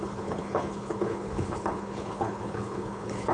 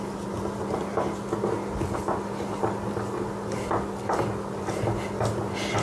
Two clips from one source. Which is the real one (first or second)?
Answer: second